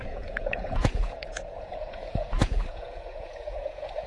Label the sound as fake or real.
fake